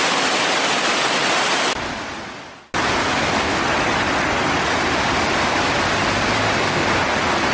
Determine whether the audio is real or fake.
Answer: real